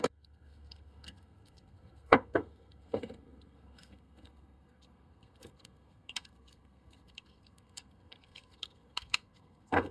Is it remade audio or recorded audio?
remade